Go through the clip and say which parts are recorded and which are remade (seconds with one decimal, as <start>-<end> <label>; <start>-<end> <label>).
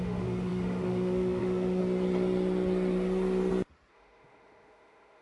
0.0-1.8 remade; 1.8-3.9 recorded; 3.9-5.2 remade